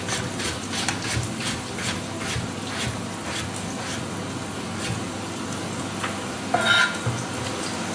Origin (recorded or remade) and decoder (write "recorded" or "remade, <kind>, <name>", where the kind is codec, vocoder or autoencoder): recorded